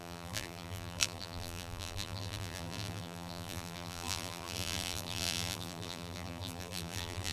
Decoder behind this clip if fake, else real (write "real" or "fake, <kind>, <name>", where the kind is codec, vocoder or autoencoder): fake, vocoder, BigVGAN v2